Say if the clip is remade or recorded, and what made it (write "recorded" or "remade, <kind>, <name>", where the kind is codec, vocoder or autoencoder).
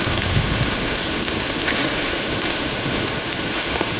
remade, autoencoder, DAC-VAE